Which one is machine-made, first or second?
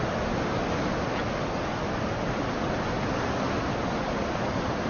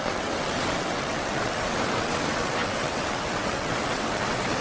second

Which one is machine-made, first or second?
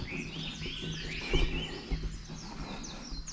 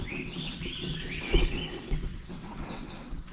second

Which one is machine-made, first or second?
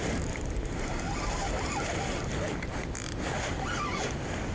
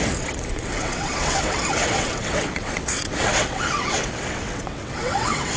second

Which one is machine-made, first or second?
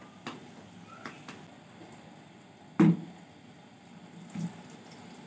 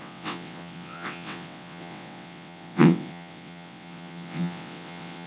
second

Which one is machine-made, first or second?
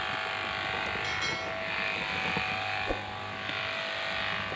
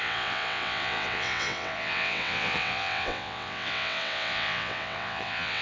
second